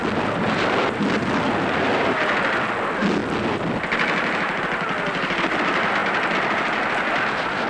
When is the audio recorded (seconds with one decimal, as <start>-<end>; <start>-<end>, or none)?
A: 0.0-7.7